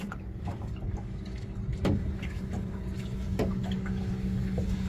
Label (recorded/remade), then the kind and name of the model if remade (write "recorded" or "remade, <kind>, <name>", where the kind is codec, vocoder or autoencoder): remade, codec, DAC